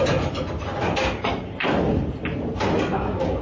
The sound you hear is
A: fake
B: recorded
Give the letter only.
B